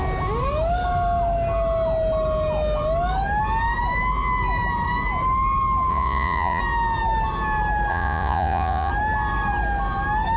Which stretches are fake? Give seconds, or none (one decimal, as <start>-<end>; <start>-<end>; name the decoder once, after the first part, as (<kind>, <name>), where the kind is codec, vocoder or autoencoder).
5.9-6.6 (vocoder, Vocos); 7.9-8.9